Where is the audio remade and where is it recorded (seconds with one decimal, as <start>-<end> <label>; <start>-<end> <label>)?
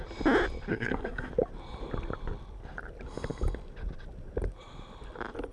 0.0-0.7 recorded; 0.7-1.3 remade; 1.3-5.5 recorded